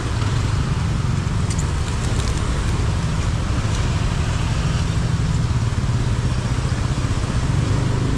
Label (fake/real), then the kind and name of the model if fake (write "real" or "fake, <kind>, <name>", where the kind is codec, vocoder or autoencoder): real